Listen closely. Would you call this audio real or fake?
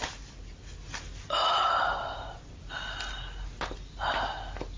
real